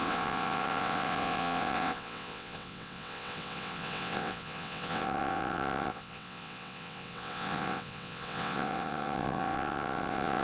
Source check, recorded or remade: remade